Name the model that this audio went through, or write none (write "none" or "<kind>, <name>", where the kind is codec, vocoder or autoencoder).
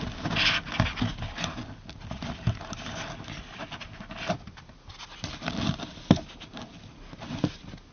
none